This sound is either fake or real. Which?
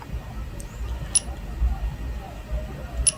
real